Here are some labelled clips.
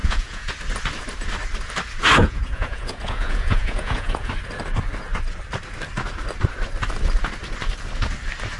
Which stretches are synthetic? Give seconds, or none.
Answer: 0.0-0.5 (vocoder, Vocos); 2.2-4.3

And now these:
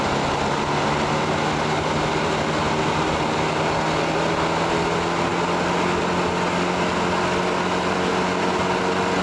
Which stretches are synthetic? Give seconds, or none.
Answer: none

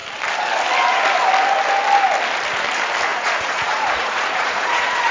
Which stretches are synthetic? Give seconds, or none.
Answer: 3.1-5.1 (vocoder, Vocos)

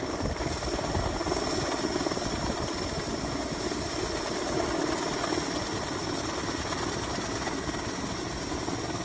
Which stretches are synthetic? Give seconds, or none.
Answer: none

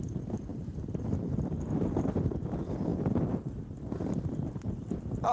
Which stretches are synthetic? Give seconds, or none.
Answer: 0.0-0.5 (vocoder, BigVGAN v2); 1.0-5.3

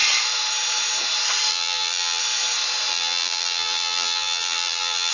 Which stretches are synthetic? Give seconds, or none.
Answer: 1.5-2.2 (vocoder, BigVGAN v2); 2.9-5.1